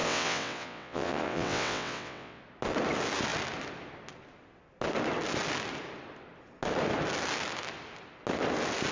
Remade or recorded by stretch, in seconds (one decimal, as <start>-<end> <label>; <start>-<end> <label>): 0.0-2.4 remade; 2.4-8.9 recorded